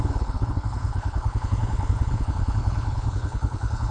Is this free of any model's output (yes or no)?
no